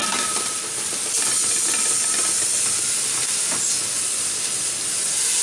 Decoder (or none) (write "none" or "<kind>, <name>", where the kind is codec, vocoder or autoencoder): none